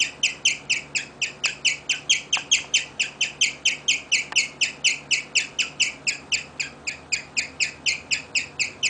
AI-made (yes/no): no